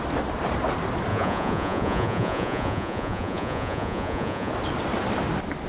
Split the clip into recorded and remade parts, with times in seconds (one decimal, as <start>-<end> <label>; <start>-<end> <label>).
0.0-1.1 recorded; 1.1-4.5 remade; 4.5-5.7 recorded